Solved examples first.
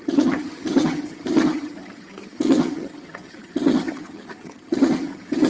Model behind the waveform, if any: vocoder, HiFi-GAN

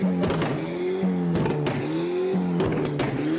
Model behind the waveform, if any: none